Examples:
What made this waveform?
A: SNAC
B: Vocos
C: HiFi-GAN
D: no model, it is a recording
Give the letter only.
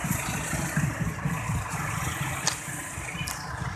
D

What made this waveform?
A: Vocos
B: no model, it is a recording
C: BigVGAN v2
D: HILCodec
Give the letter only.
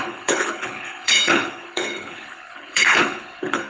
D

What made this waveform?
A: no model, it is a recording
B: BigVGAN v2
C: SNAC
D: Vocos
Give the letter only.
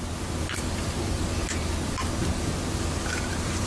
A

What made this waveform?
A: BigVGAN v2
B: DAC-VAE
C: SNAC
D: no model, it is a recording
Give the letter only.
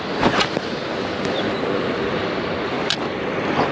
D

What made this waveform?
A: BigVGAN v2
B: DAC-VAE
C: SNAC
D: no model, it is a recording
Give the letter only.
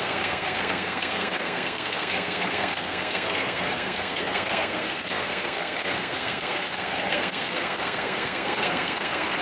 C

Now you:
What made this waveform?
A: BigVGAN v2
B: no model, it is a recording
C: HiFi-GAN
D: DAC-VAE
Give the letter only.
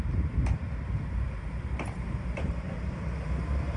A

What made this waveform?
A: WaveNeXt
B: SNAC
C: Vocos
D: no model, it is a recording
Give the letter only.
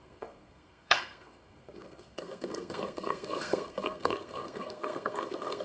B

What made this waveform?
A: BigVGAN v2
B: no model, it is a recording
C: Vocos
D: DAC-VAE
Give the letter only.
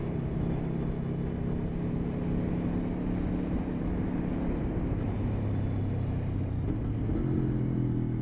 B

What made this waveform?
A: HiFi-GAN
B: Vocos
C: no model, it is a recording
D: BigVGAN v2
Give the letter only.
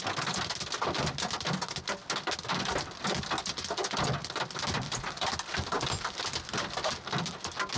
C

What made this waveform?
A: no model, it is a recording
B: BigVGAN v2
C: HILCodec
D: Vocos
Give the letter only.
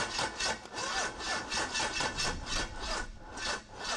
A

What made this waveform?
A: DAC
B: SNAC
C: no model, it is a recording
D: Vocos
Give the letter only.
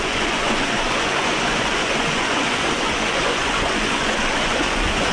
D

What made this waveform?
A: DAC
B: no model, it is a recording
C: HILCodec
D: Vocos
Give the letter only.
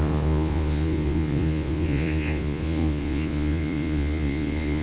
D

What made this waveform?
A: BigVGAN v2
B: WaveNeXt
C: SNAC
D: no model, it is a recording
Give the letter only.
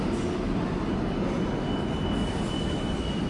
D